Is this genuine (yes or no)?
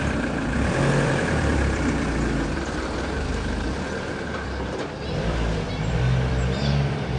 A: no